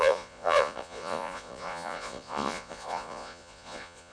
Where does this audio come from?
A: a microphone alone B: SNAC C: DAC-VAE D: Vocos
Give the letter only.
D